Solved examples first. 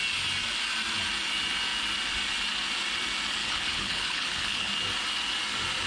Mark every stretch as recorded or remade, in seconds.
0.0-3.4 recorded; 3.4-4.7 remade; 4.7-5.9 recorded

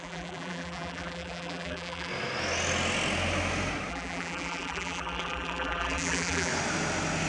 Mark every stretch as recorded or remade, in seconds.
0.0-2.1 remade; 2.1-3.9 recorded; 3.9-6.5 remade; 6.5-7.3 recorded